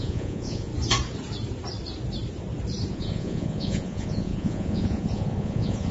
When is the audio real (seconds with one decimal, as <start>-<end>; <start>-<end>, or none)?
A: 0.7-2.9